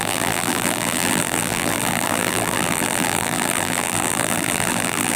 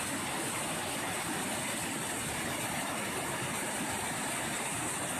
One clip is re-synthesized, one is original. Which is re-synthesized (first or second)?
first